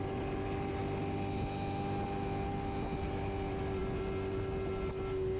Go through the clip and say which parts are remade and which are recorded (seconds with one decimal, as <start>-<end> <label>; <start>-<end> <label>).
0.0-5.4 recorded